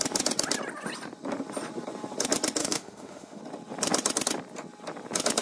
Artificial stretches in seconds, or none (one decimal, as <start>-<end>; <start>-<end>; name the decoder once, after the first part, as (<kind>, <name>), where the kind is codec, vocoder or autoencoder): 2.6-3.4 (autoencoder, DAC-VAE)